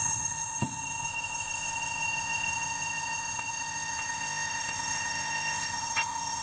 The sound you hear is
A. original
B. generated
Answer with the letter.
B